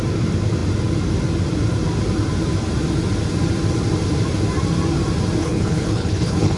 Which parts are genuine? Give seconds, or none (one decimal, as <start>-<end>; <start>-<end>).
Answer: 0.0-5.4